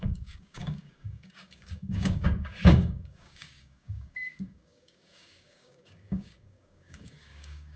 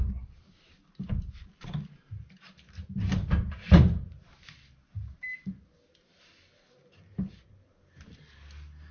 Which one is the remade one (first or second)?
first